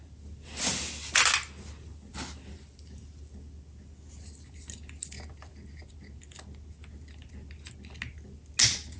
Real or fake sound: real